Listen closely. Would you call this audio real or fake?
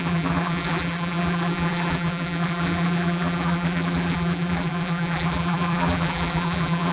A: fake